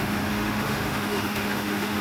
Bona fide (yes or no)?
no